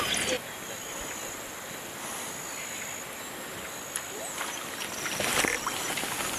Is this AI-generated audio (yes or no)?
no